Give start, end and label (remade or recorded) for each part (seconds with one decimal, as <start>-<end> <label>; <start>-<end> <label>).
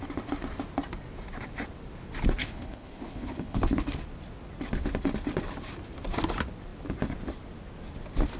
0.0-2.4 recorded; 2.4-3.6 remade; 3.6-8.4 recorded